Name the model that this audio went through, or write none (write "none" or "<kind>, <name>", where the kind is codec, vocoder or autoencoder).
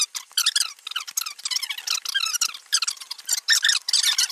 none